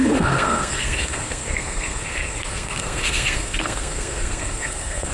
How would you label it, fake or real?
fake